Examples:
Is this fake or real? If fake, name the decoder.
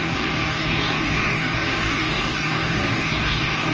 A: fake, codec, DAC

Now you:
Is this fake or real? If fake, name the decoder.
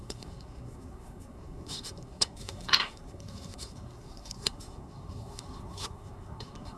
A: fake, codec, SNAC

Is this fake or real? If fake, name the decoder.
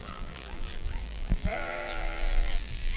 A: fake, vocoder, BigVGAN v2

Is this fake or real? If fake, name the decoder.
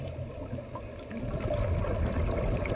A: real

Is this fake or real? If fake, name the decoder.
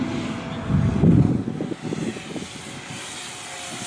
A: real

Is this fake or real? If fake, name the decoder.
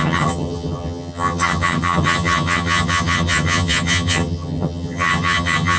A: fake, vocoder, HiFi-GAN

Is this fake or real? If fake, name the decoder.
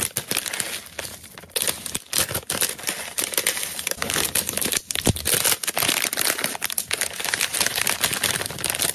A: real